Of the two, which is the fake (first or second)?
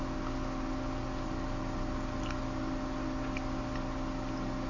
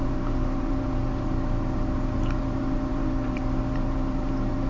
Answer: second